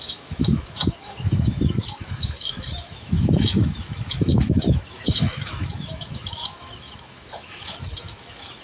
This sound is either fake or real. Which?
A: fake